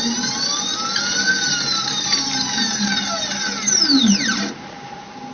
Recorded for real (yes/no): yes